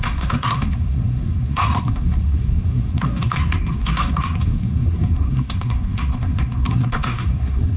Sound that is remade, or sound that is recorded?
remade